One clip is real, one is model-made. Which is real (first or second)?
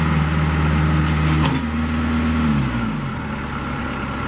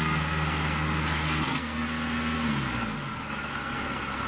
first